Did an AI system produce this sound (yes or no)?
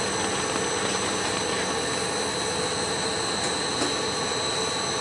no